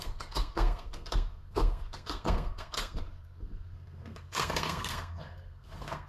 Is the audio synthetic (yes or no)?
yes